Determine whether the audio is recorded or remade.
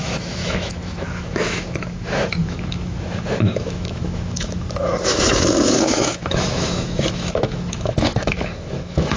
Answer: remade